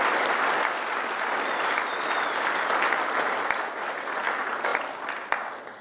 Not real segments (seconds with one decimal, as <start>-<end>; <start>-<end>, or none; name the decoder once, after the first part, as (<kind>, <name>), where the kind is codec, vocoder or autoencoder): none